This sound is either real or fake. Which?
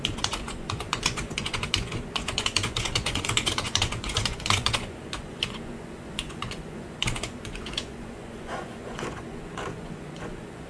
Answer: fake